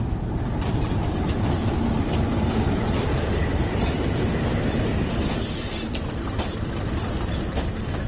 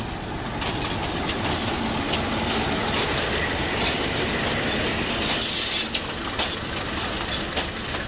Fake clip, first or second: first